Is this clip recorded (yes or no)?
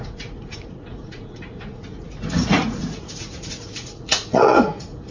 no